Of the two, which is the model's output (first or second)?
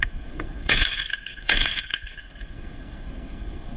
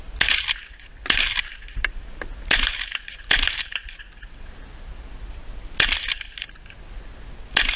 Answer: first